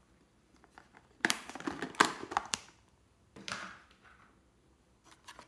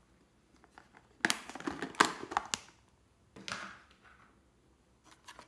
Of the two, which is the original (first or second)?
second